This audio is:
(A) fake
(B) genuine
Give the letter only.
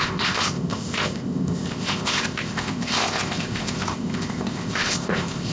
A